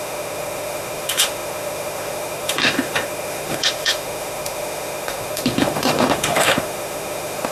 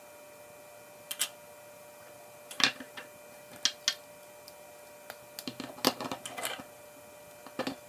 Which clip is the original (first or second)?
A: second